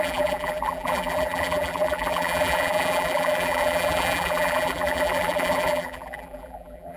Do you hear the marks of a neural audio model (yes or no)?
yes